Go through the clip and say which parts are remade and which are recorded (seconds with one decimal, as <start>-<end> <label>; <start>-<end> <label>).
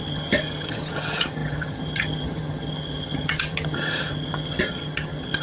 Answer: 0.0-5.4 remade